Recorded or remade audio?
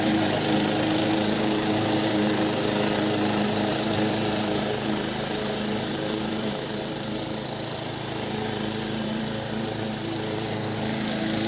remade